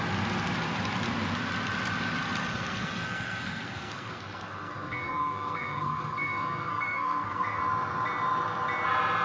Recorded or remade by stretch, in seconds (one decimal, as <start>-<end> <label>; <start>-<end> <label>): 0.0-2.5 recorded; 2.5-7.6 remade; 7.6-9.2 recorded